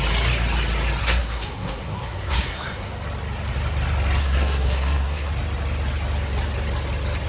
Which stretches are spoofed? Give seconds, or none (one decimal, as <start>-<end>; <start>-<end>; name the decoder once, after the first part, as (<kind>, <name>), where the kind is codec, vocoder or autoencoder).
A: 1.0-2.9 (codec, SNAC); 4.2-5.3